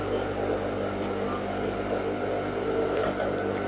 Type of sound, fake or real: real